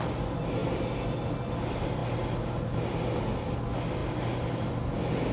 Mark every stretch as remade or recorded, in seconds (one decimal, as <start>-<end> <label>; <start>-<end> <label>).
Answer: 0.0-5.3 recorded

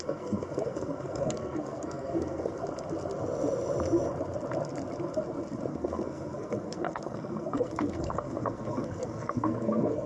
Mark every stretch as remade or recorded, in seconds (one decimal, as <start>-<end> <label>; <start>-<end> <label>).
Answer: 0.0-2.6 remade; 2.6-5.7 recorded; 5.7-10.1 remade

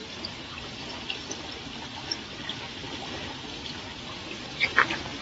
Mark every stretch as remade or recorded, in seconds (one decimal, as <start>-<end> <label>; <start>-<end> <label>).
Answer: 0.0-0.7 remade; 0.7-1.9 recorded; 1.9-3.0 remade; 3.0-4.7 recorded; 4.7-5.2 remade

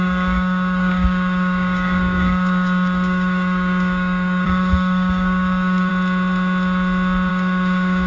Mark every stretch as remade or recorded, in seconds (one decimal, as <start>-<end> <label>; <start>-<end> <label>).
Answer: 0.0-5.9 remade; 5.9-7.3 recorded; 7.3-8.1 remade

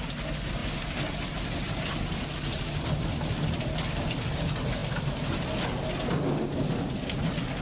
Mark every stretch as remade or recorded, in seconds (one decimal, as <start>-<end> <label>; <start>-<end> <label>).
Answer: 0.0-7.6 recorded

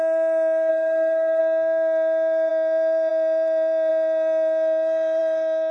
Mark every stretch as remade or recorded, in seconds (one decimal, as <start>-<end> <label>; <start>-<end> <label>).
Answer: 0.0-0.7 recorded; 0.7-1.4 remade; 1.4-5.7 recorded

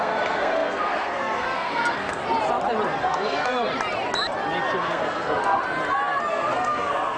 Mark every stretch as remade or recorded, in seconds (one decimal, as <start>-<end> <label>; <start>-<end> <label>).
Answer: 0.0-2.2 remade; 2.2-3.0 recorded; 3.0-3.7 remade; 3.7-4.8 recorded; 4.8-5.6 remade; 5.6-6.3 recorded; 6.3-7.2 remade